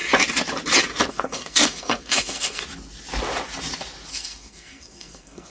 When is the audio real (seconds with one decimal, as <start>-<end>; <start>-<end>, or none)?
0.0-1.1; 2.6-4.1